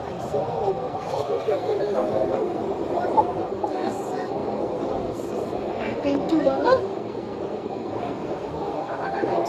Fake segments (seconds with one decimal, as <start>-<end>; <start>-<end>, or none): 0.0-2.6; 3.2-9.5